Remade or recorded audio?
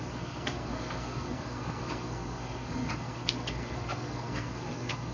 remade